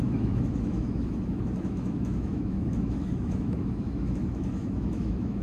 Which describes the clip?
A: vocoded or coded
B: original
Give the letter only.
A